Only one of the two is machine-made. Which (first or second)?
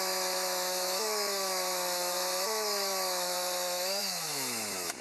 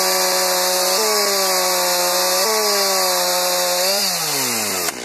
first